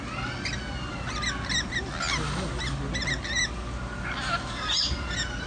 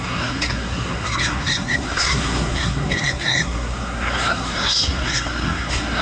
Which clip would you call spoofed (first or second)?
second